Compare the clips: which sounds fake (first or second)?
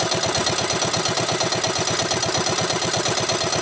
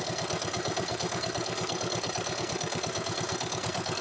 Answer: second